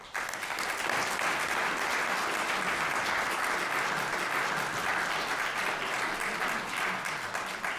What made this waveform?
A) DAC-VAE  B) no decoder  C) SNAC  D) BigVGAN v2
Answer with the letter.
B